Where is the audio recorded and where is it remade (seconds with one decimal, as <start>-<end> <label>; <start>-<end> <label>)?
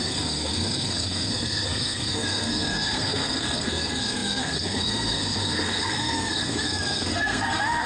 0.0-7.9 remade